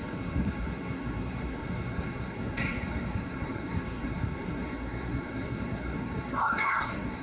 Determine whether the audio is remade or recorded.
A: remade